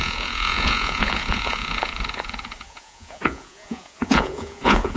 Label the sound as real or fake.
fake